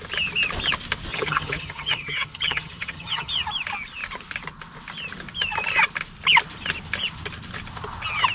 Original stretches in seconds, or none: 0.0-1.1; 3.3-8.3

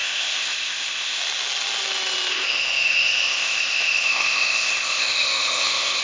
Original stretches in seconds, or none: 1.2-2.3

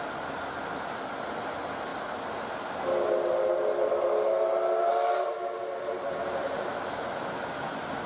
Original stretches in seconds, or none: 0.0-8.1

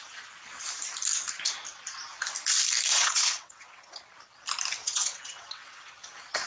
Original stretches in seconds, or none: 0.0-2.9; 4.0-4.8; 5.9-6.5